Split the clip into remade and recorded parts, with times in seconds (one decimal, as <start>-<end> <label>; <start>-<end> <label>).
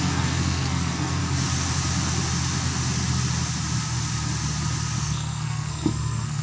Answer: 0.0-1.2 remade; 1.2-5.0 recorded; 5.0-6.4 remade